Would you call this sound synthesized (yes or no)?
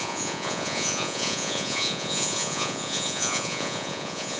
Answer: yes